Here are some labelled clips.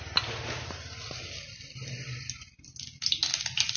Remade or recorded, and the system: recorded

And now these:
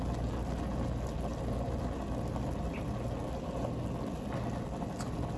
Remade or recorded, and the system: recorded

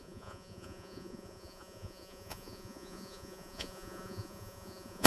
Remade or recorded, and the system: remade, vocoder, Vocos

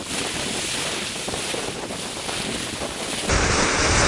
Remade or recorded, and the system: recorded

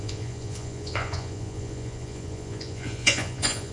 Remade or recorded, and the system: remade, vocoder, Vocos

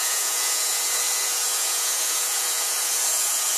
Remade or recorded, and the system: remade, vocoder, Vocos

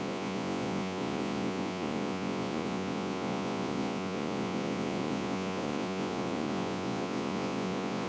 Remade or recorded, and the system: remade, vocoder, Vocos